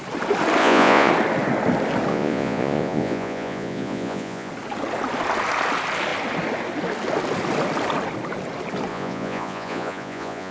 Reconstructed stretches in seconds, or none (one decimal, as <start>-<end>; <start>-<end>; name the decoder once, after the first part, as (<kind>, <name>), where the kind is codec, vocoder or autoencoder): 0.6-1.1 (vocoder, Vocos); 2.1-4.5; 8.9-10.5